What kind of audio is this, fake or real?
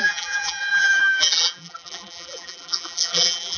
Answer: fake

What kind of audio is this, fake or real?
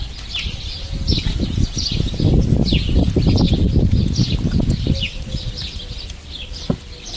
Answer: real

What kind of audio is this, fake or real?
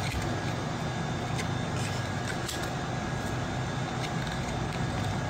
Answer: real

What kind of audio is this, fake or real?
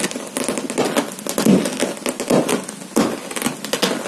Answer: real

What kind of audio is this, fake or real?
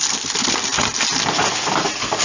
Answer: real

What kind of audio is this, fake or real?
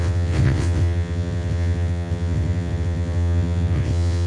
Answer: fake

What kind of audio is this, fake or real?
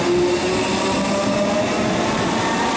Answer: real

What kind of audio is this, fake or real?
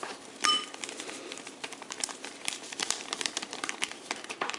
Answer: fake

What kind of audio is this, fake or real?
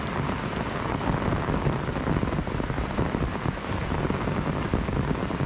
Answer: real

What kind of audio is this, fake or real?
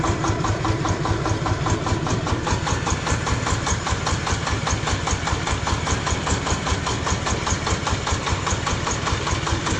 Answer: fake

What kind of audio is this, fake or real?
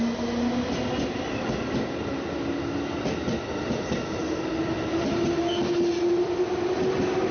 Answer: real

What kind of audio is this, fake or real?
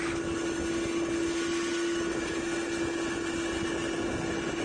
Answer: real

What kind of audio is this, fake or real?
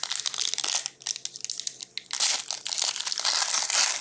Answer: real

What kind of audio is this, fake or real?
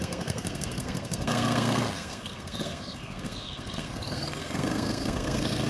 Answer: fake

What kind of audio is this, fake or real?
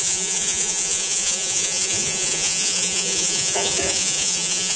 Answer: fake